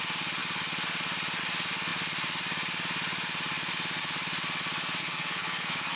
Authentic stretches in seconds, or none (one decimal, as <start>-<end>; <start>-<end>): 0.0-5.0